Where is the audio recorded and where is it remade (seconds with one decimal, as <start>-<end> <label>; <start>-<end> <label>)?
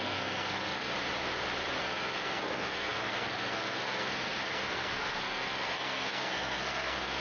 0.0-0.9 remade; 0.9-1.8 recorded; 1.8-7.2 remade